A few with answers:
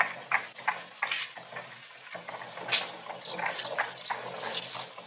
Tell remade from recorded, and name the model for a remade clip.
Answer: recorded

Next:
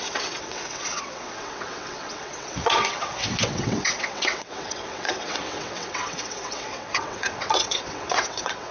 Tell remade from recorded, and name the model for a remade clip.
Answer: remade, vocoder, WaveNeXt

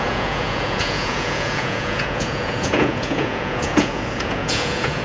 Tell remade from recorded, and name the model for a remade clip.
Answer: remade, vocoder, Vocos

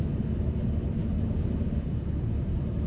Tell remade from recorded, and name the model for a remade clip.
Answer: recorded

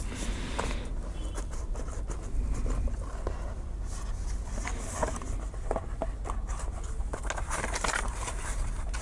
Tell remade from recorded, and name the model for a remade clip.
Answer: recorded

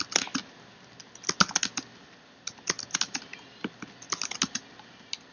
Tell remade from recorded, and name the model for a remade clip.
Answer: recorded